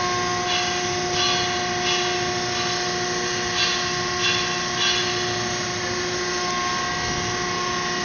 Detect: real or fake real